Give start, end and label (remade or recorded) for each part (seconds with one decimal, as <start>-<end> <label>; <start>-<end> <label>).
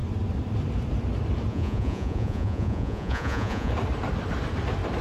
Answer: 0.0-1.5 recorded; 1.5-3.7 remade; 3.7-5.0 recorded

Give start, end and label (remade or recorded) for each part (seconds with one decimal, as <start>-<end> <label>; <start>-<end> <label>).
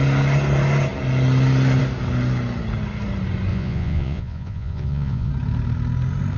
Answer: 0.0-3.5 recorded; 3.5-5.3 remade; 5.3-6.4 recorded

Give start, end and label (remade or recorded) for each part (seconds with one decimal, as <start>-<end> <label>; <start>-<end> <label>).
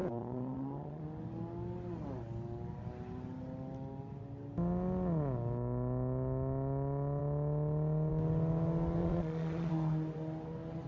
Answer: 0.0-1.0 remade; 1.0-9.0 recorded; 9.0-9.7 remade; 9.7-10.9 recorded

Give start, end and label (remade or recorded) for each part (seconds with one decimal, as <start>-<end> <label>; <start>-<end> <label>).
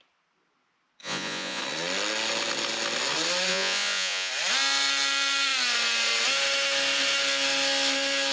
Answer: 0.0-1.0 recorded; 1.0-1.6 remade; 1.6-3.5 recorded; 3.5-4.3 remade; 4.3-8.3 recorded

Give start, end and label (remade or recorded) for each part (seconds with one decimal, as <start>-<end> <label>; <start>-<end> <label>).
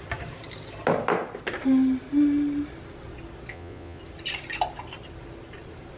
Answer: 0.0-3.5 recorded; 3.5-4.0 remade; 4.0-6.0 recorded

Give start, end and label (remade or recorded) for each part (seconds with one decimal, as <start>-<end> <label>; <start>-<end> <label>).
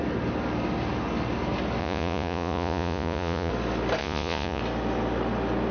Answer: 0.0-1.8 recorded; 1.8-3.5 remade; 3.5-4.0 recorded; 4.0-4.6 remade; 4.6-5.7 recorded